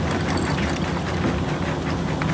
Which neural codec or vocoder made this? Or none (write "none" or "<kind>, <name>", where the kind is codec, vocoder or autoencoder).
none